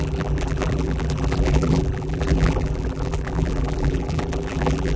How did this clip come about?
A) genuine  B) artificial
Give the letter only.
B